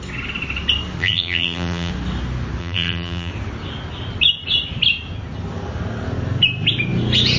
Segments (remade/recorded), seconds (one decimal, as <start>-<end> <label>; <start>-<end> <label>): 0.0-1.0 recorded; 1.0-1.9 remade; 1.9-2.6 recorded; 2.6-3.3 remade; 3.3-7.4 recorded